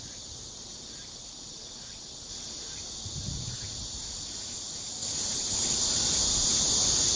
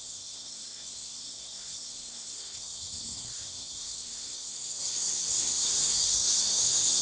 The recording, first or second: first